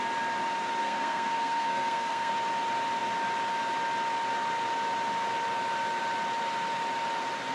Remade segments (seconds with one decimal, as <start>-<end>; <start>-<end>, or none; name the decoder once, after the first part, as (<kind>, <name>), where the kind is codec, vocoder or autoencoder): 0.8-2.3 (codec, SNAC)